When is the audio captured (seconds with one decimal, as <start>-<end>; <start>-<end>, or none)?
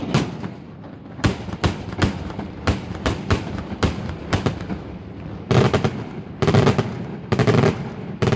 none